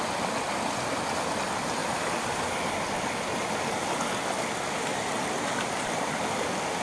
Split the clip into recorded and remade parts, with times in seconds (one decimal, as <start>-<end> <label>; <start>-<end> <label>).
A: 0.0-6.8 recorded